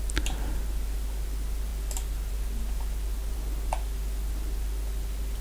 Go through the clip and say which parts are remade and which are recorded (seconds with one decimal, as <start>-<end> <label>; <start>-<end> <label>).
0.0-5.4 recorded